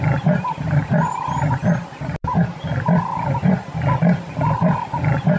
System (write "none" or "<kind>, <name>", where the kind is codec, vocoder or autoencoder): none